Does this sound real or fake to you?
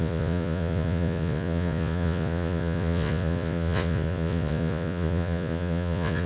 fake